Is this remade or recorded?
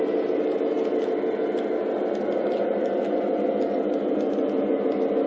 recorded